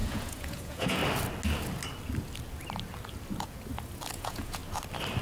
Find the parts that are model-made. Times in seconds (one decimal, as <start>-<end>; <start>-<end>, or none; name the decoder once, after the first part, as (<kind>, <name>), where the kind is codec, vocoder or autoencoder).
0.0-1.0 (vocoder, Vocos); 4.1-4.6